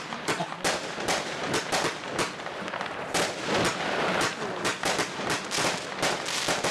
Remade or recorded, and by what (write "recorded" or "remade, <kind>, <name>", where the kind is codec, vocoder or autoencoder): recorded